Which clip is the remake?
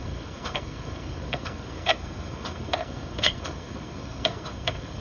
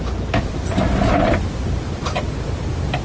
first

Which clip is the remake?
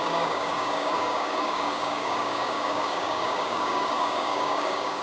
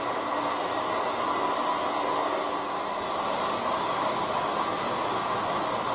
first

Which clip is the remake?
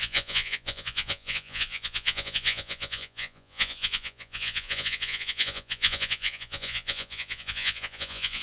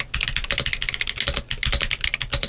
first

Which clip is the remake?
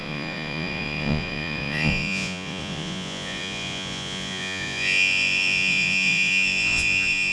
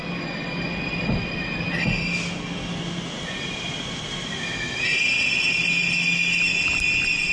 first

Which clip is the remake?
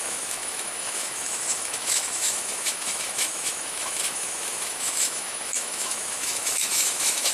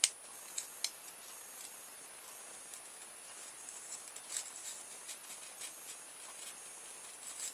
first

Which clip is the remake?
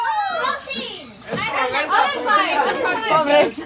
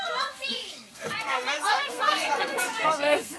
second